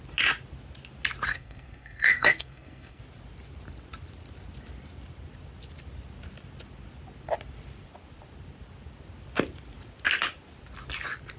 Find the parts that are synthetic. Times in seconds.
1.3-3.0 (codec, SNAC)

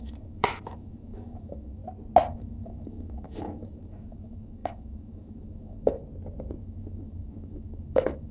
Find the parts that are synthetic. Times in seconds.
0.0-1.8 (autoencoder, DAC-VAE); 2.3-6.0; 6.6-8.3